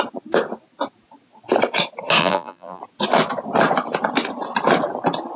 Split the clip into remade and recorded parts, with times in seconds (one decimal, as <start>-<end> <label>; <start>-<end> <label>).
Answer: 0.0-2.2 recorded; 2.2-2.8 remade; 2.8-5.4 recorded

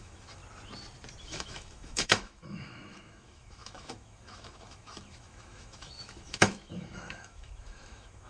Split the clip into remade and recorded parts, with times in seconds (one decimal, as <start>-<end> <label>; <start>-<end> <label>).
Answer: 0.0-0.4 remade; 0.4-1.2 recorded; 1.2-8.3 remade

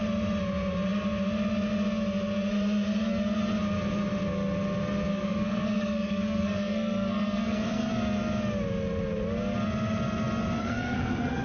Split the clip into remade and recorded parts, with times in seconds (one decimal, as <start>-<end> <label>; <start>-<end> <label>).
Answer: 0.0-5.1 recorded; 5.1-7.9 remade; 7.9-10.6 recorded; 10.6-11.4 remade

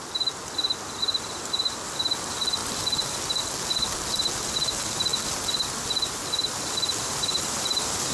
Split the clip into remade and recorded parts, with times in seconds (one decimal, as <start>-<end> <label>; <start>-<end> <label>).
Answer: 0.0-8.1 recorded

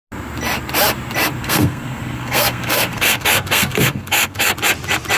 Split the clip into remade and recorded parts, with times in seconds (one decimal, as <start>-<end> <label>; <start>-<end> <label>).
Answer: 0.0-1.4 recorded; 1.4-4.5 remade; 4.5-5.2 recorded